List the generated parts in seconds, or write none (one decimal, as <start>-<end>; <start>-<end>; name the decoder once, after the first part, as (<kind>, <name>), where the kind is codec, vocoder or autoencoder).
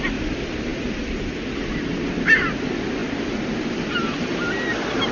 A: none